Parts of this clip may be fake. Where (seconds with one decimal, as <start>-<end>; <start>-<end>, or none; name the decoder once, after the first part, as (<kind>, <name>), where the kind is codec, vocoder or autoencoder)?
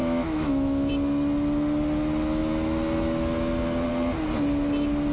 0.0-0.9 (autoencoder, DAC-VAE)